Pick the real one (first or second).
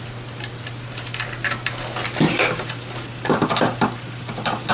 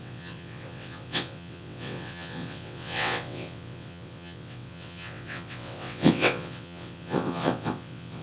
first